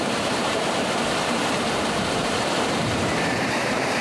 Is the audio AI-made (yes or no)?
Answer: yes